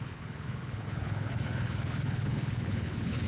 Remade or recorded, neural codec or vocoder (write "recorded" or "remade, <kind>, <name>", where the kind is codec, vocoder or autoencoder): remade, codec, HILCodec